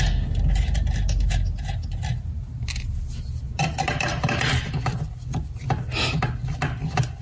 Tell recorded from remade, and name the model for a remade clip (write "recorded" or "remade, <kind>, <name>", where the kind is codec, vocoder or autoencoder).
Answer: recorded